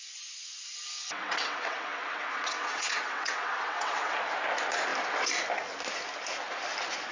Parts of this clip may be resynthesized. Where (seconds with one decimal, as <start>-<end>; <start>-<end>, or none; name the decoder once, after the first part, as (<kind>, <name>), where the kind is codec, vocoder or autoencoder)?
1.0-4.2 (vocoder, WaveNeXt)